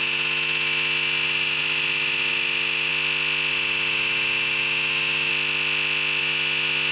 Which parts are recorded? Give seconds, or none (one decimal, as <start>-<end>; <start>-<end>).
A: 2.9-3.5; 5.3-6.2